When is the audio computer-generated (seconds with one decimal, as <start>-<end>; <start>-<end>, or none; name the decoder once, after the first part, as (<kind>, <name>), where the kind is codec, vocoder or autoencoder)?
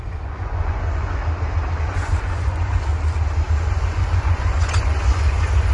0.0-1.2 (vocoder, Vocos); 1.8-2.9; 3.6-5.7